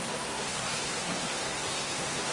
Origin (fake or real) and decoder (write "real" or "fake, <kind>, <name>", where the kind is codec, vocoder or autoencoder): fake, codec, SNAC